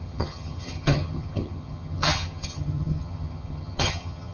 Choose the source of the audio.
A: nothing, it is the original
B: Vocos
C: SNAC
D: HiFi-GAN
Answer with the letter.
D